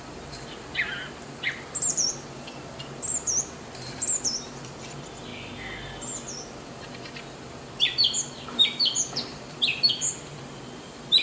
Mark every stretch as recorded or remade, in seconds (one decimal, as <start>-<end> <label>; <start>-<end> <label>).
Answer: 0.0-5.3 remade; 5.3-6.6 recorded; 6.6-11.2 remade